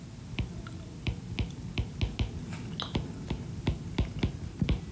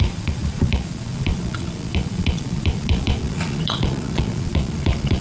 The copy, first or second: second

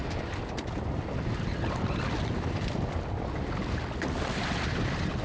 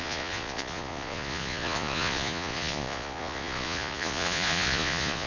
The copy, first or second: second